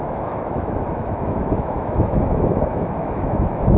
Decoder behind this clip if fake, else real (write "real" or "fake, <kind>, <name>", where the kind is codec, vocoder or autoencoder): fake, autoencoder, DAC-VAE